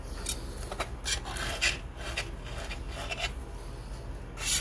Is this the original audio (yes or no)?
yes